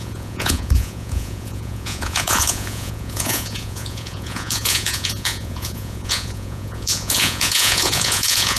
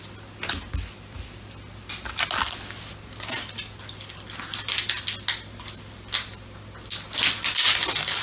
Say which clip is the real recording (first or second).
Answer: second